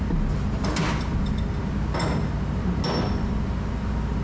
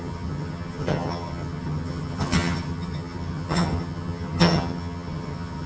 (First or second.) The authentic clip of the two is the first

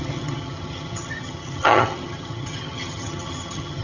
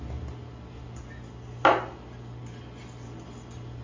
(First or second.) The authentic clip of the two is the second